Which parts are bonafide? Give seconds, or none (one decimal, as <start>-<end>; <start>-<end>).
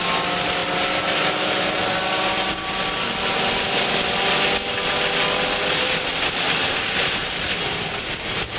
0.0-8.6